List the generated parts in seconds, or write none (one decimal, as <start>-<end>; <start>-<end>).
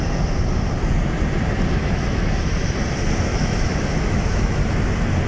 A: 1.8-2.3; 3.3-4.6